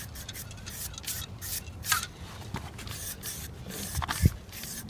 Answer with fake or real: real